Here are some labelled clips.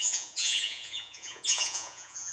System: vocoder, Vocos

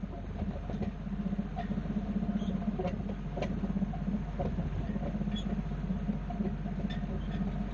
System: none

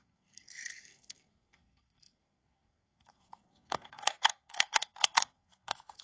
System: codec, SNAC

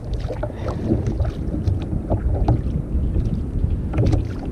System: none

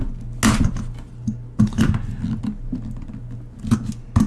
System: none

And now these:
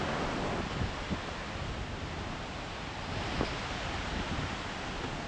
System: none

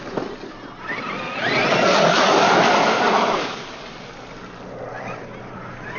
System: none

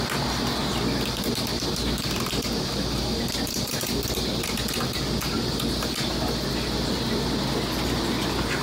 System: none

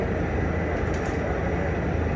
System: none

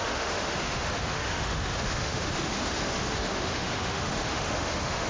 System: autoencoder, DAC-VAE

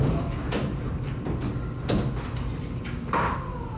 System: none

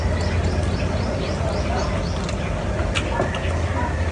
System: none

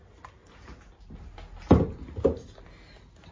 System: none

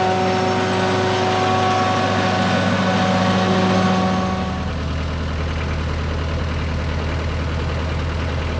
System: none